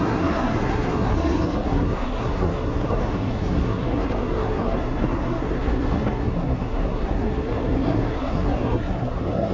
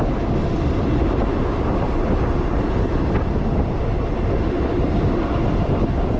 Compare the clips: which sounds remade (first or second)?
first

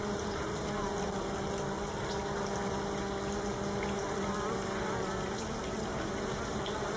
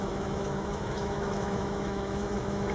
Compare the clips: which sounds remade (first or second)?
second